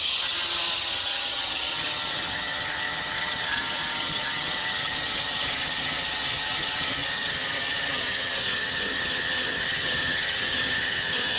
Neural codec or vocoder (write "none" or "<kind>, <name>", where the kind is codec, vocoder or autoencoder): vocoder, HiFi-GAN